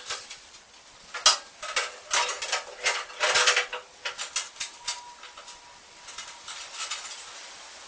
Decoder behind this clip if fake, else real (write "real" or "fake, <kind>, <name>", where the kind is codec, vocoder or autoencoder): real